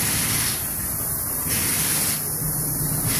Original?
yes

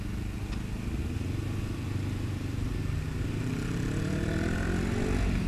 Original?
yes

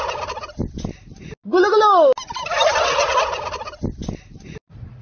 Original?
yes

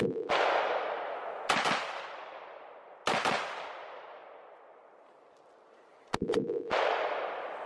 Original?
yes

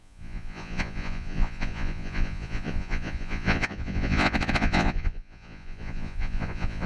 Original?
no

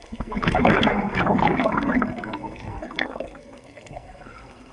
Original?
no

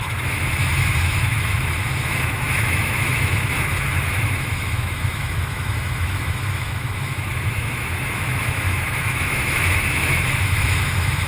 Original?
no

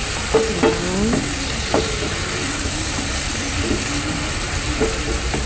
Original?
yes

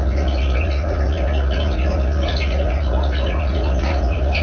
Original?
no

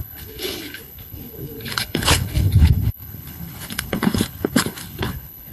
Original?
no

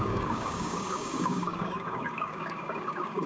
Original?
no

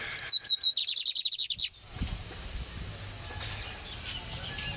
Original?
yes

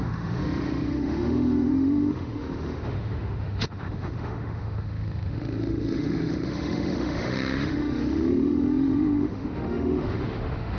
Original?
no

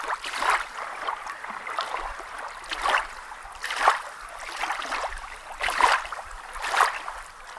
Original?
yes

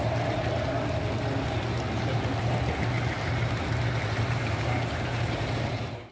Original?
yes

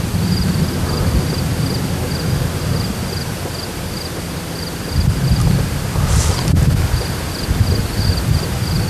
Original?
yes